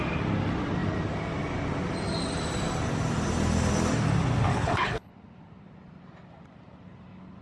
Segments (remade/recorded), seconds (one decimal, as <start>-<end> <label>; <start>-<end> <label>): 0.0-4.5 recorded; 4.5-5.1 remade; 5.1-7.4 recorded